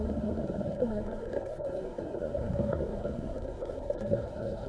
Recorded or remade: remade